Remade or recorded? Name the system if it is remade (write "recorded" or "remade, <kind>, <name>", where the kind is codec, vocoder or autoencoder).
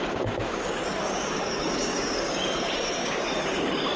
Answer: remade, codec, DAC